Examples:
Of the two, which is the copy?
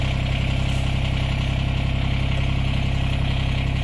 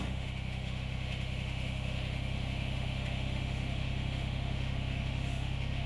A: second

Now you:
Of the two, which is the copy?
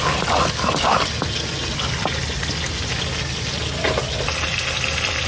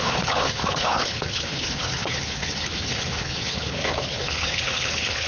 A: second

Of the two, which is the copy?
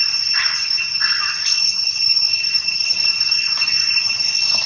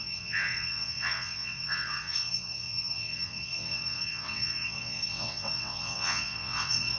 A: second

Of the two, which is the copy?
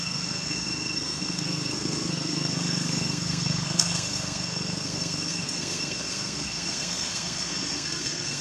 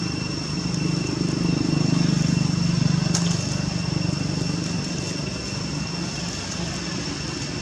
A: first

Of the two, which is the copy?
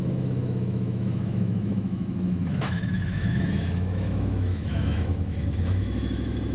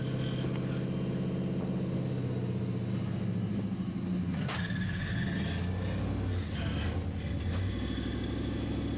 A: first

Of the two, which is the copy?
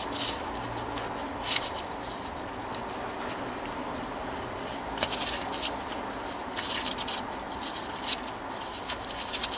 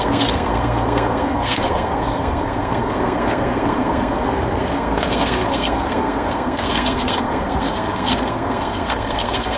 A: second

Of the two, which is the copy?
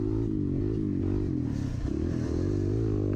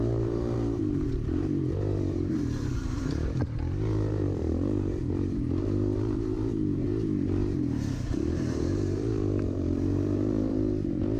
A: second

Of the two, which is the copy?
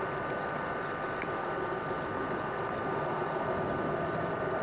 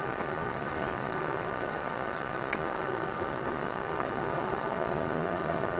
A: second